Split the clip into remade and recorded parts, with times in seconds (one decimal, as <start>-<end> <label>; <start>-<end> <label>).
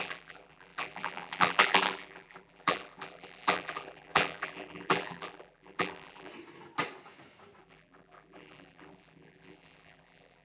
0.0-6.3 remade; 6.3-7.6 recorded; 7.6-10.4 remade